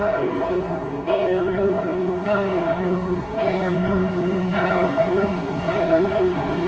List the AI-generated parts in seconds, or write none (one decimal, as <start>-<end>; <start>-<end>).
0.0-6.7